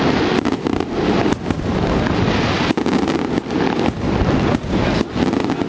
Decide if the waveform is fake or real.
real